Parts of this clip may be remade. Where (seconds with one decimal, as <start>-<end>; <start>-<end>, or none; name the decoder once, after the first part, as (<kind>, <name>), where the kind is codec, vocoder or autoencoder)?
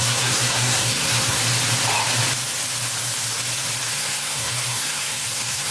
0.0-1.4 (codec, SNAC); 3.9-5.7